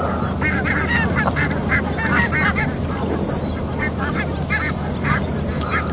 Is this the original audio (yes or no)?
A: yes